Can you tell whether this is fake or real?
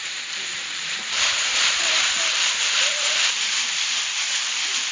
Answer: fake